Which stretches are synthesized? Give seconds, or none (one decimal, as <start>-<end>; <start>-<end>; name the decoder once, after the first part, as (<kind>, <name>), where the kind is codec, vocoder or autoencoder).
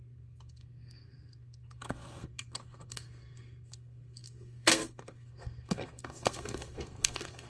0.0-7.5 (codec, SNAC)